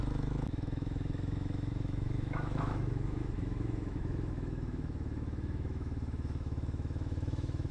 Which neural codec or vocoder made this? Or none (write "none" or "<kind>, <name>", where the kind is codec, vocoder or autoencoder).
autoencoder, DAC-VAE